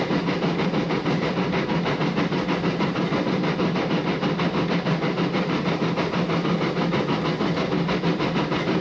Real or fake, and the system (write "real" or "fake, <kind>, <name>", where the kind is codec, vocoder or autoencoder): real